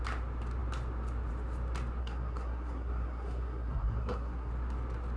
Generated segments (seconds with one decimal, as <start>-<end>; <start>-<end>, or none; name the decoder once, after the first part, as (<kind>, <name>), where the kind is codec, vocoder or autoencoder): 2.0-4.5 (codec, SNAC)